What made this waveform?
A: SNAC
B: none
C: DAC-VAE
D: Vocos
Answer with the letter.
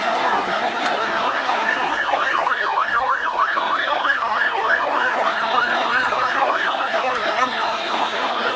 A